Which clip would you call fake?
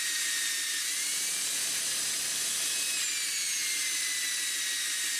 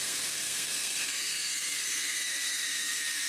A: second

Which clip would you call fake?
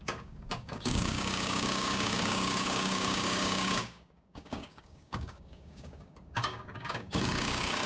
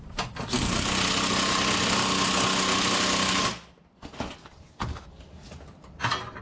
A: first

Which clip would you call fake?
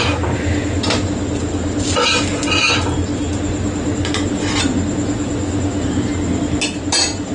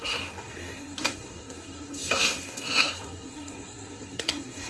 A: second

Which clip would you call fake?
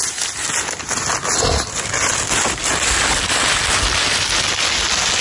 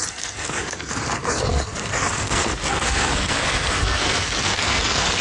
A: second